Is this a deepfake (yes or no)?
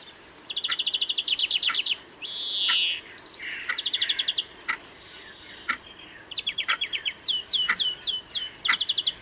no